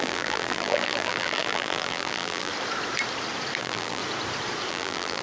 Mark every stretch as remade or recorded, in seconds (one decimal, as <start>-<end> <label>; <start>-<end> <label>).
0.0-2.5 remade; 2.5-3.6 recorded; 3.6-4.0 remade; 4.0-4.7 recorded; 4.7-5.2 remade